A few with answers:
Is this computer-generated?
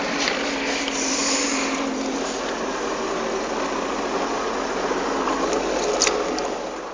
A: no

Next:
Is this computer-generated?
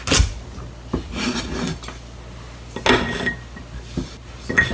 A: no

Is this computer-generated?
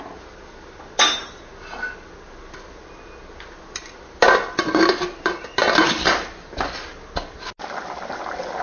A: no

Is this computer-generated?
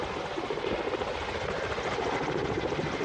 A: no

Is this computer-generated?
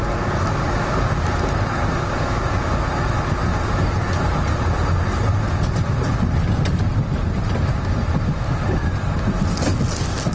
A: no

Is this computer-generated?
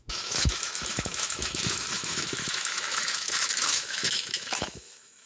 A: yes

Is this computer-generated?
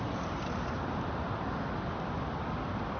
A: no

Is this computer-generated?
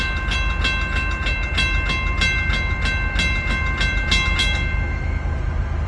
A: no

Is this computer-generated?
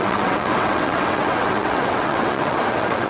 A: yes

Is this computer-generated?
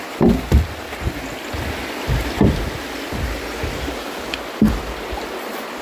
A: no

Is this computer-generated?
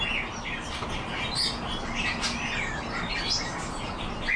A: no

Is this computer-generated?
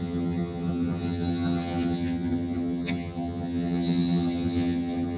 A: yes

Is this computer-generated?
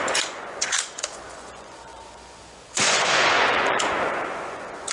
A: yes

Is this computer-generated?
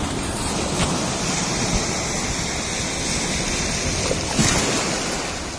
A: no